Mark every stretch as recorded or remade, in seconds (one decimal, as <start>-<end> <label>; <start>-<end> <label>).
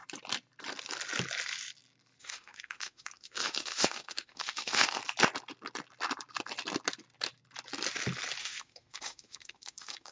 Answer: 0.0-2.2 recorded; 2.2-5.0 remade; 5.0-8.4 recorded; 8.4-10.1 remade